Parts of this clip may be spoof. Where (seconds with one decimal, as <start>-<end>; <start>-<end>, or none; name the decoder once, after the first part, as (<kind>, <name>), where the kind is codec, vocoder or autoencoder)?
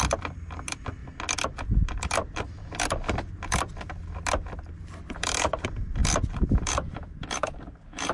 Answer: 0.0-1.0 (vocoder, BigVGAN v2); 4.8-6.0; 6.6-8.1